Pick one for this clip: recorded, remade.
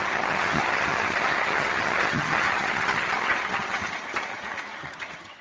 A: remade